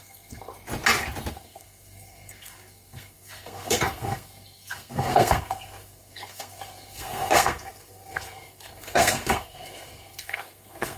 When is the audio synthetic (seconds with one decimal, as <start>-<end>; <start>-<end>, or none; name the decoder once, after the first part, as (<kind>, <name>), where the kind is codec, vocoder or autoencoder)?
0.0-0.5 (codec, SNAC); 1.3-11.0